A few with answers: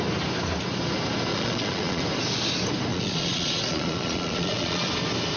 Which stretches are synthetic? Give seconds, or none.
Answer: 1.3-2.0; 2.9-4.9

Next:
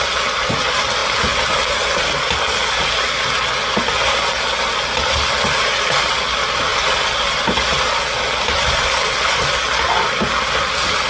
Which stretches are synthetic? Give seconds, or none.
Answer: none

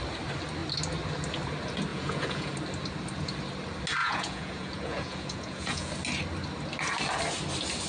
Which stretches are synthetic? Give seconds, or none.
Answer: 1.9-2.5; 4.0-5.9

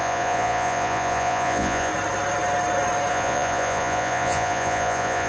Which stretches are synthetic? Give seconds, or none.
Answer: 0.0-1.9; 3.1-5.3

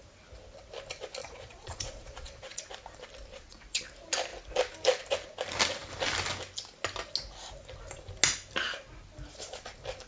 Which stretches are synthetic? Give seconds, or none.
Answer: 1.2-2.6; 3.3-3.8

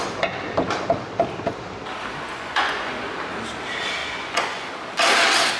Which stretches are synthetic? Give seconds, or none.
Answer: 2.3-2.9; 4.0-4.7

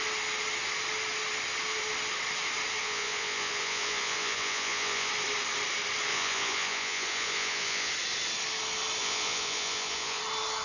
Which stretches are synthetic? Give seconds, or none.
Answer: 2.8-5.1; 6.1-7.9; 9.0-10.2

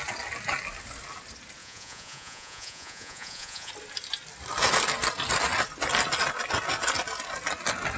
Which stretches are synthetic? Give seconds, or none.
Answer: 1.6-3.7